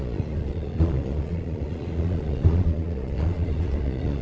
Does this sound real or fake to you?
fake